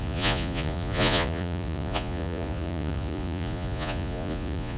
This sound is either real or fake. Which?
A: fake